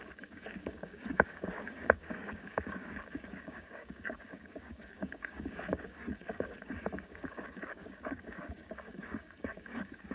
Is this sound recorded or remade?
remade